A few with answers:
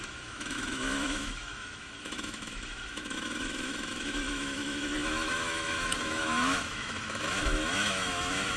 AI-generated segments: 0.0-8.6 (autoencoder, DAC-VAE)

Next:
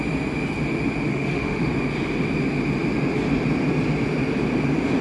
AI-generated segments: 1.1-1.7 (autoencoder, DAC-VAE)

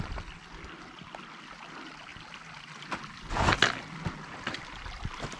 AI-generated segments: none

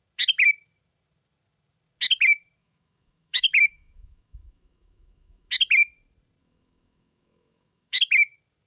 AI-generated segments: 2.6-5.5 (autoencoder, DAC-VAE); 6.4-8.0

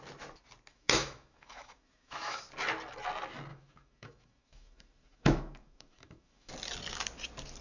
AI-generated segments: 0.7-2.4 (autoencoder, DAC-VAE); 3.5-6.5

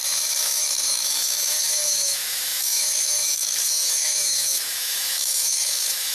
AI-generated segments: 0.0-6.1 (autoencoder, DAC-VAE)

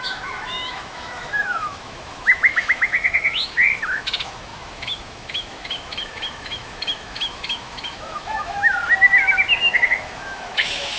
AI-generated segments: 0.0-8.8 (autoencoder, DAC-VAE); 9.6-11.0

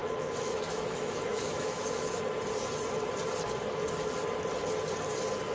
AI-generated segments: 0.0-2.2 (autoencoder, DAC-VAE)